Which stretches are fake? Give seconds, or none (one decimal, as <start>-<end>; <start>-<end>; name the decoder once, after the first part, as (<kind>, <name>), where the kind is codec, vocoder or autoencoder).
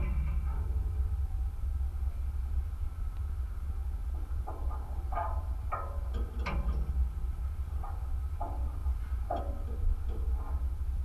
4.0-6.9 (vocoder, BigVGAN v2); 8.8-9.4